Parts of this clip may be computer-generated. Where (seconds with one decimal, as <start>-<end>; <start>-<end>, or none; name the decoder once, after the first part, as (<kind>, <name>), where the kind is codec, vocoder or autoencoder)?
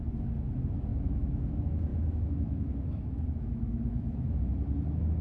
0.9-1.5 (autoencoder, DAC-VAE); 1.9-4.4